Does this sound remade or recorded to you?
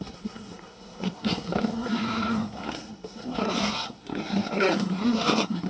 remade